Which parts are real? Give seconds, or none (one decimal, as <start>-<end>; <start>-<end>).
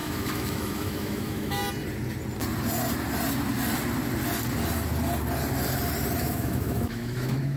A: 1.6-6.2